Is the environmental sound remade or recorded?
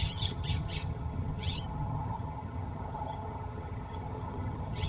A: remade